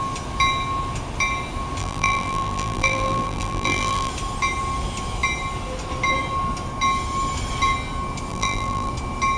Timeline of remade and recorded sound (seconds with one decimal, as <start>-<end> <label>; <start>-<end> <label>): 0.0-1.8 recorded; 1.8-4.1 remade; 4.1-8.3 recorded; 8.3-8.9 remade; 8.9-9.4 recorded